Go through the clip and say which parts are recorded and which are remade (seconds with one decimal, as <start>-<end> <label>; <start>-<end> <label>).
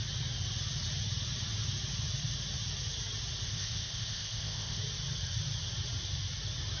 0.0-3.5 recorded; 3.5-4.8 remade; 4.8-6.8 recorded